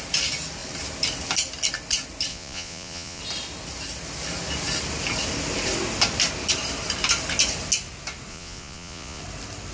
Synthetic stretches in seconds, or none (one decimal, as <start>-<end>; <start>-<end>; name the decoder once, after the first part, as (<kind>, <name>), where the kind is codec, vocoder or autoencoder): 2.3-3.2 (vocoder, Vocos); 8.3-9.2